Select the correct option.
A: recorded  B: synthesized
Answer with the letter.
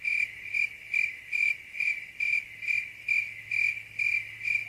A